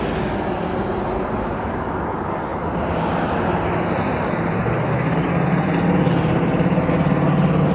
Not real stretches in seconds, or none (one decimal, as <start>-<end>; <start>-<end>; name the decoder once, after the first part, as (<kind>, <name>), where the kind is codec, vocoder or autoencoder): none